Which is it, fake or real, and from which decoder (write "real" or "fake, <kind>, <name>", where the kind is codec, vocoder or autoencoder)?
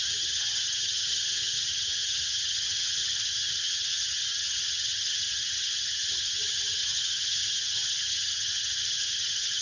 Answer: fake, vocoder, HiFi-GAN